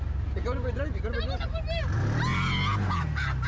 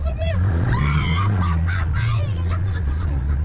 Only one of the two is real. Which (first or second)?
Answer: first